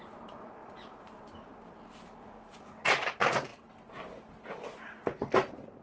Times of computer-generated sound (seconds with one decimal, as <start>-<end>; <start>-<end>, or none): 0.6-1.2